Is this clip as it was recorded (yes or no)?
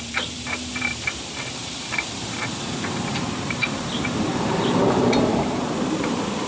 no